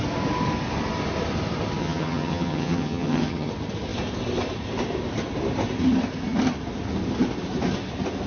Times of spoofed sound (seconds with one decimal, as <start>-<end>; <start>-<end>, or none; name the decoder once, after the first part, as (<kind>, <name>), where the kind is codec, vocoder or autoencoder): 1.8-3.5 (vocoder, HiFi-GAN)